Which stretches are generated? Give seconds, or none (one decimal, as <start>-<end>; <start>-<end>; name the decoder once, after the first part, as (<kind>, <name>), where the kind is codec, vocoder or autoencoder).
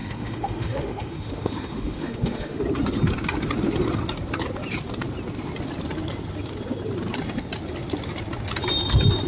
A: 0.0-2.6 (autoencoder, DAC-VAE)